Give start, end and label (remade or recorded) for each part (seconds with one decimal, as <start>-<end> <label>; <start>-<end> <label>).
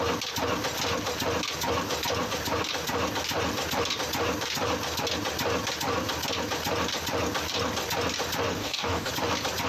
0.0-8.5 recorded; 8.5-9.1 remade; 9.1-9.7 recorded